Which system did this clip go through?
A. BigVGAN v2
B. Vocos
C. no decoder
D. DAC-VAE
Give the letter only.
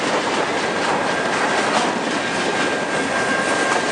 C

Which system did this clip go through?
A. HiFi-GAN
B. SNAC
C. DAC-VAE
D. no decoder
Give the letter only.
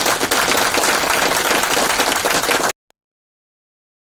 D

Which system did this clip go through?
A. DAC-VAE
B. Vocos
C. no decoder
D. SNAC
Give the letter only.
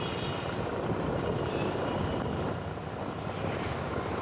C